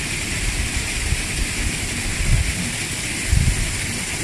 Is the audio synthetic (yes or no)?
no